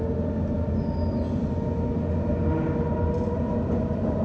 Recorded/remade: recorded